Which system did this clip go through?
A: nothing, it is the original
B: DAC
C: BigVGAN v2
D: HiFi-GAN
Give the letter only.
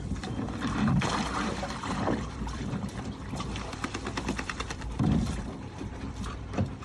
C